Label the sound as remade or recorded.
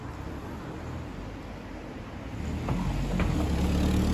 recorded